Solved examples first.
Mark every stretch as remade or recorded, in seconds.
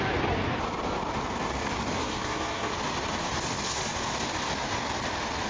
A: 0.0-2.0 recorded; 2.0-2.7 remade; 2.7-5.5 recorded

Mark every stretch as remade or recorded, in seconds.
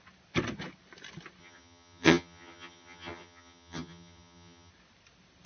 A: 0.0-1.4 recorded; 1.4-4.7 remade; 4.7-5.5 recorded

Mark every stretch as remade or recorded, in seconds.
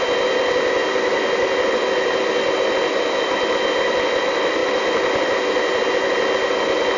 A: 0.0-7.0 recorded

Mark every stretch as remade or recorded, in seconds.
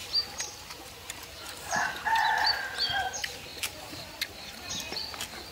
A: 0.0-2.3 remade; 2.3-3.5 recorded; 3.5-4.7 remade; 4.7-5.5 recorded